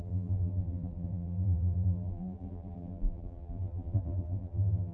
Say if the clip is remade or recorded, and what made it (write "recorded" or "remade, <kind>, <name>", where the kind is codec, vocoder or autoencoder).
remade, vocoder, BigVGAN v2